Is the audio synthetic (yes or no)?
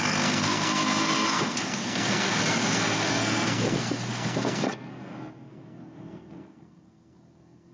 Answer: yes